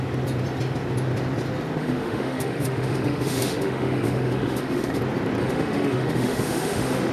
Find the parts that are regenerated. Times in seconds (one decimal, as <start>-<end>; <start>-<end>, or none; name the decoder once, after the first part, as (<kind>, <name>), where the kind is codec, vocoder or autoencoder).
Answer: 1.8-5.0 (autoencoder, DAC-VAE); 5.4-7.1